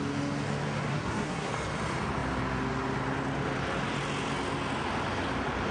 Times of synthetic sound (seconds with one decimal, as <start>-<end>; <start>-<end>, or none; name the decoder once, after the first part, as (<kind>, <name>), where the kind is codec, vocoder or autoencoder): 0.9-1.5 (codec, SNAC)